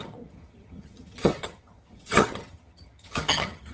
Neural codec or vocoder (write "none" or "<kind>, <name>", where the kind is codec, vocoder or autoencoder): vocoder, HiFi-GAN